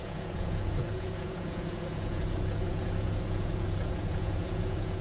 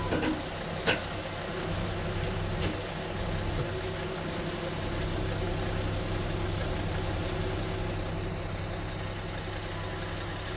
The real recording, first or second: second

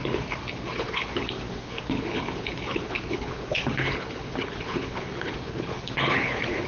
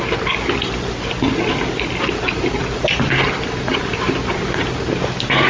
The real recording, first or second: second